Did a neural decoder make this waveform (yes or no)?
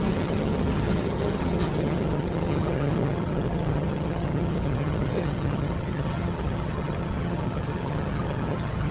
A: yes